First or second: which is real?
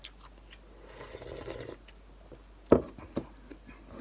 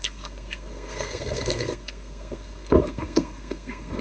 first